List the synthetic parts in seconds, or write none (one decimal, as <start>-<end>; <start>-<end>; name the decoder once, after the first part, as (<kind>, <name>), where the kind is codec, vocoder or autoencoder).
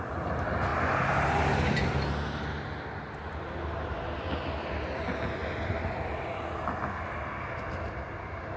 none